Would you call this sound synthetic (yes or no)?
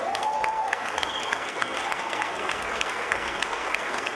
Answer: yes